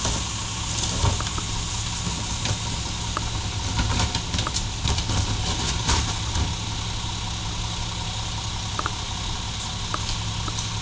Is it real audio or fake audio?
real